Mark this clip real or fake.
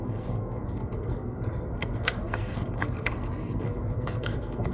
fake